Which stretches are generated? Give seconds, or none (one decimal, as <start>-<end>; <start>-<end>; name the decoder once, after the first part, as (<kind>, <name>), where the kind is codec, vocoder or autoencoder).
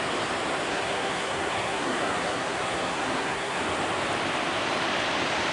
0.7-3.6 (codec, SNAC)